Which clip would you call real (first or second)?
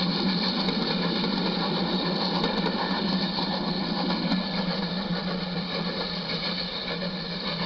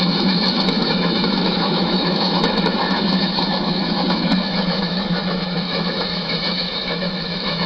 first